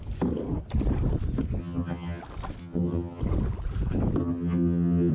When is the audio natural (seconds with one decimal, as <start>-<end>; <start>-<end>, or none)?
0.0-1.6; 2.2-2.6; 3.2-4.2